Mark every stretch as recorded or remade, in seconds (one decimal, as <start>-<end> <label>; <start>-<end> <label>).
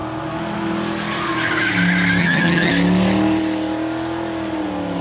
0.0-2.2 recorded; 2.2-2.7 remade; 2.7-5.0 recorded